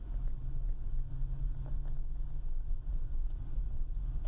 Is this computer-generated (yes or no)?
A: no